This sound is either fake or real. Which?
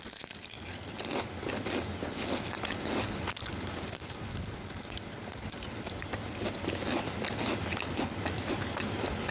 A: real